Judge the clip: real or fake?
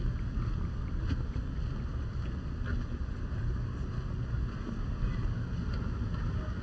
real